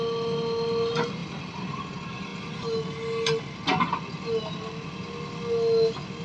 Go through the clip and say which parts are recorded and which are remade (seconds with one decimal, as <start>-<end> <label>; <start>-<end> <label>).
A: 0.0-1.2 recorded; 1.2-1.9 remade; 1.9-6.2 recorded